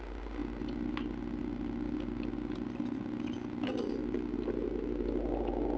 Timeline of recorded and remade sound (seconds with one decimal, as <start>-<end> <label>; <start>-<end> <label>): 0.0-5.8 recorded